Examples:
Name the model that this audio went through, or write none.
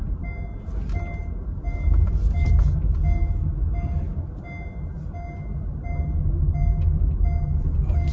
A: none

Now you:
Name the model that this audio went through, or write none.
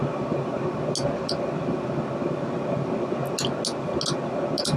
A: none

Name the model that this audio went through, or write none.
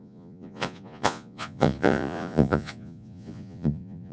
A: vocoder, Vocos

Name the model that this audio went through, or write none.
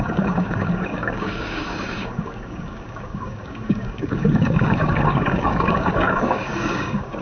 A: codec, DAC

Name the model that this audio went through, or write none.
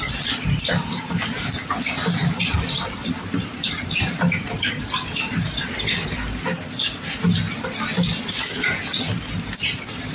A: none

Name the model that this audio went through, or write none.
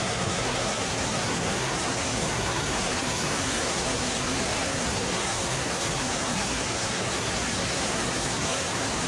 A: codec, SNAC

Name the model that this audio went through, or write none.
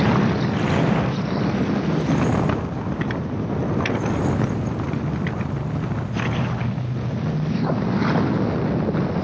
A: none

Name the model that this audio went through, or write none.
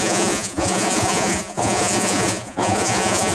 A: vocoder, Vocos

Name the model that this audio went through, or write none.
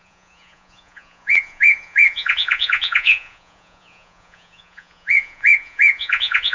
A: vocoder, Vocos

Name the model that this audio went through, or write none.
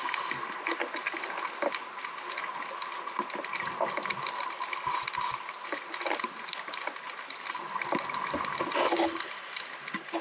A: none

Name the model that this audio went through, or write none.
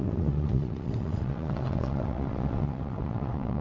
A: vocoder, WaveNeXt